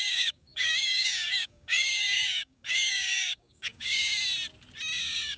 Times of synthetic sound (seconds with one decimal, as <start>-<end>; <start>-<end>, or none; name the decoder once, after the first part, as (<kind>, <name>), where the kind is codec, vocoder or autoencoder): 0.0-4.1 (codec, DAC); 5.0-5.4